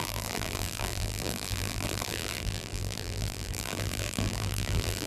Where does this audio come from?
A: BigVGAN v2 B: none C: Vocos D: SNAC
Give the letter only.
A